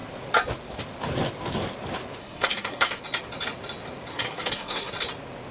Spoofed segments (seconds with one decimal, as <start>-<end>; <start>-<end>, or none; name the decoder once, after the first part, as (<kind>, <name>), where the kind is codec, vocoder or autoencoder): 2.2-3.0 (codec, SNAC); 4.1-4.9